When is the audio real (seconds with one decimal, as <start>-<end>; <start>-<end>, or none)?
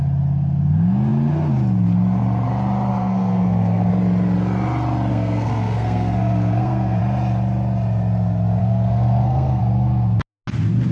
0.0-2.9; 3.9-5.1; 7.0-8.6; 9.6-10.9